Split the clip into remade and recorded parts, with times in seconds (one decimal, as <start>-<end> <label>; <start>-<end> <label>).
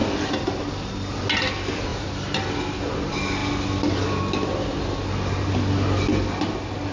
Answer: 0.0-6.9 recorded